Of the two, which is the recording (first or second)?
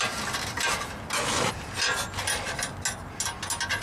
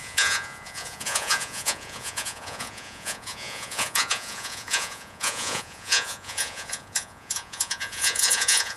first